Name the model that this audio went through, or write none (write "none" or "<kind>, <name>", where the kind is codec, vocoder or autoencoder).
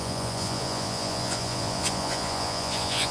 vocoder, Vocos